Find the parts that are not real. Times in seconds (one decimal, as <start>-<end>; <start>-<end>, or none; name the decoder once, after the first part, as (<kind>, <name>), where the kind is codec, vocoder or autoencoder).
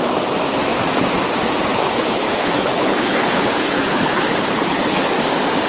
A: 1.7-5.1 (codec, HILCodec)